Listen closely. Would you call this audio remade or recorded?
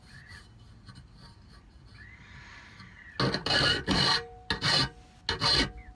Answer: recorded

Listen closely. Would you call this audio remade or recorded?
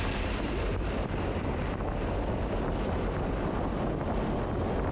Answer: recorded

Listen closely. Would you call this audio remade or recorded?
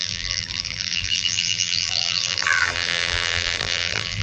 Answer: remade